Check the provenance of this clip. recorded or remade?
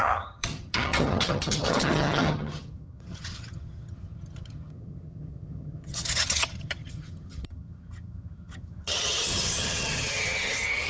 remade